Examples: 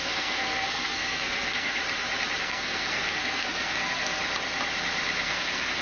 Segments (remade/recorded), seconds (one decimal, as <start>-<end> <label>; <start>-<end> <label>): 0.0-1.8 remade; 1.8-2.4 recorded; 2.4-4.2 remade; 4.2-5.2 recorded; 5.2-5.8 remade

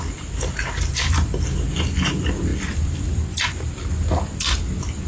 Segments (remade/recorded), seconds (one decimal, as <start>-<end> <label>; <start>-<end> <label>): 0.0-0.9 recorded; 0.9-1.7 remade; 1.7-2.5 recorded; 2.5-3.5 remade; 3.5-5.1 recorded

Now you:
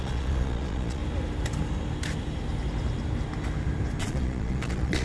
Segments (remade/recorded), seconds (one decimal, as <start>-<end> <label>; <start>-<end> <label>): 0.0-1.0 remade; 1.0-4.0 recorded; 4.0-5.0 remade